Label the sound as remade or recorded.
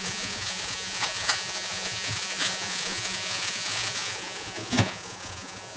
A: remade